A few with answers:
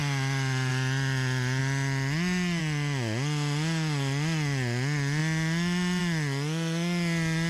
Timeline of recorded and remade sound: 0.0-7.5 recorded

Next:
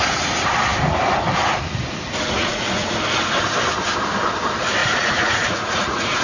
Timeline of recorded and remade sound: 0.0-2.4 recorded; 2.4-3.0 remade; 3.0-4.8 recorded; 4.8-6.2 remade

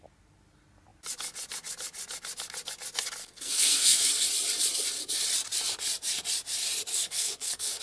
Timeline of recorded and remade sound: 0.0-3.2 recorded; 3.2-4.1 remade; 4.1-6.9 recorded; 6.9-7.8 remade